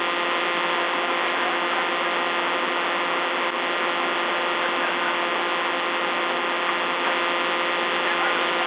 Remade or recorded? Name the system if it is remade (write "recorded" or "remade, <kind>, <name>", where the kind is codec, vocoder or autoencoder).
recorded